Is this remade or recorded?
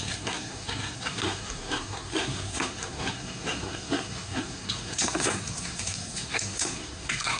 remade